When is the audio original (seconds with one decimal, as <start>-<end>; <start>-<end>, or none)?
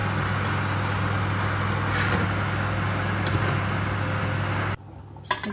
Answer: 0.0-5.5